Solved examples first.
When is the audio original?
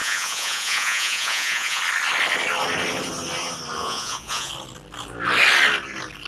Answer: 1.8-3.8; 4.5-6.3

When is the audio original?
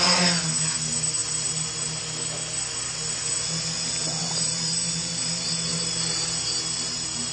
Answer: 0.0-7.3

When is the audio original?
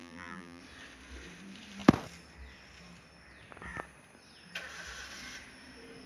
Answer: 0.6-6.1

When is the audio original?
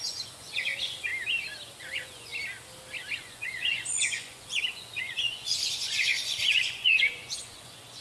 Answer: 1.1-1.8; 2.3-3.2